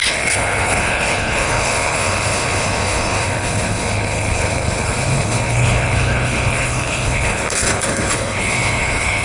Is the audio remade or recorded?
remade